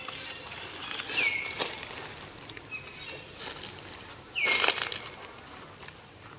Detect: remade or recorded recorded